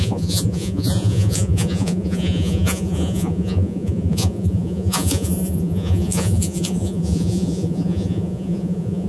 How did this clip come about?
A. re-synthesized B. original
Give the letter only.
A